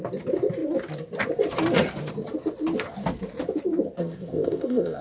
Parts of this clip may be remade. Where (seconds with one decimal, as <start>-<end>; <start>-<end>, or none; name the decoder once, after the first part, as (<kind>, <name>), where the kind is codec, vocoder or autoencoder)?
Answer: 4.0-5.0 (codec, ZipCodec)